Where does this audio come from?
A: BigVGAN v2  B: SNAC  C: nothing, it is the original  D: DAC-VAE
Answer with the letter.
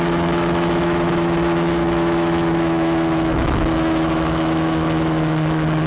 D